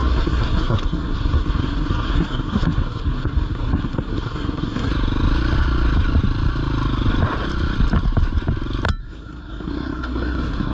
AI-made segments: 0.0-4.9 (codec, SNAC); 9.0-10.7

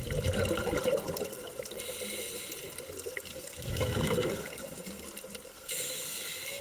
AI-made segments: 3.3-5.0 (codec, SNAC); 5.5-6.6

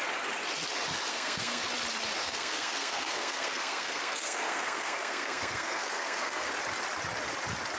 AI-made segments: 1.1-1.7 (codec, SNAC); 2.2-6.5